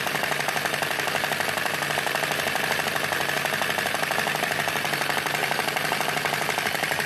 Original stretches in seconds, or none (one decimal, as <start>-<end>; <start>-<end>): 0.0-7.1